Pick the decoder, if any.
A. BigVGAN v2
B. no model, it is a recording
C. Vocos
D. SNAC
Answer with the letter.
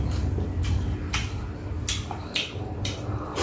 B